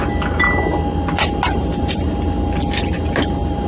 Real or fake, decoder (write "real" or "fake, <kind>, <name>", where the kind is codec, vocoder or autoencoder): real